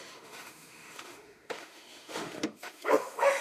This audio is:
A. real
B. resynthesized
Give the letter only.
B